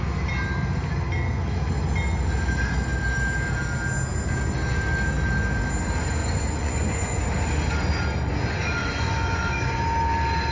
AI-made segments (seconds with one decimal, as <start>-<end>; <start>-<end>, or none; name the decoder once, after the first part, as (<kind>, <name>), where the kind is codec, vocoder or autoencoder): 6.2-7.2 (vocoder, Vocos); 8.8-9.8

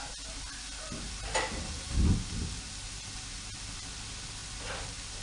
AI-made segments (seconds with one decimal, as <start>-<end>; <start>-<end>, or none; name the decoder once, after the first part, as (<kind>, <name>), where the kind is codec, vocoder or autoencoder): none